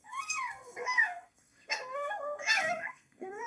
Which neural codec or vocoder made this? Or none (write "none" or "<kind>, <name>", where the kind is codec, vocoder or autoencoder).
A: codec, SNAC